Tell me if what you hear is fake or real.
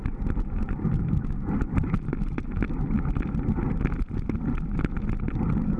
real